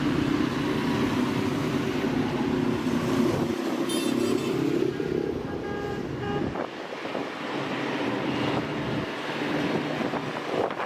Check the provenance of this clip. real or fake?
real